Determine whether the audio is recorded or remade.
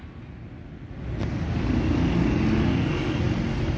recorded